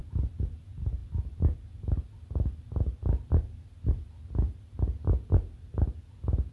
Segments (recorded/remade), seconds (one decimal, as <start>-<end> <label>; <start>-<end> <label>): 0.0-6.5 recorded